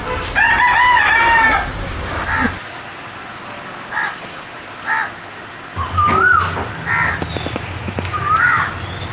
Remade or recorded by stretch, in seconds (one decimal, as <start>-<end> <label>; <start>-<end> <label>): 0.0-3.3 recorded; 3.3-4.3 remade; 4.3-9.1 recorded